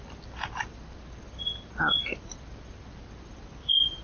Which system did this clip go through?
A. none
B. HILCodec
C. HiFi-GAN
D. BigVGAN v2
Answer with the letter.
A